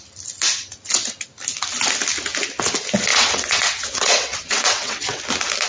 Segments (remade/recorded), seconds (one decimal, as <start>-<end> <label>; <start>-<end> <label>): 0.0-3.1 recorded; 3.1-5.2 remade; 5.2-5.7 recorded